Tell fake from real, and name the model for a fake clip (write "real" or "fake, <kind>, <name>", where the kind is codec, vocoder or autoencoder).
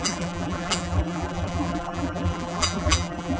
fake, vocoder, BigVGAN v2